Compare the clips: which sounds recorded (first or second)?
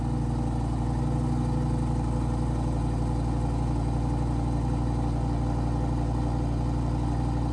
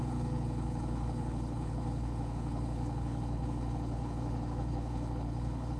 first